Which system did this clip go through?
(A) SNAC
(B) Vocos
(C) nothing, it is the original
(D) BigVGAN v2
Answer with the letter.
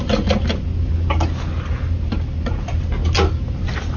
C